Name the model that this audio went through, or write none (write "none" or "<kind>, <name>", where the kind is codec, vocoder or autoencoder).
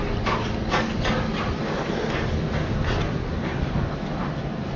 none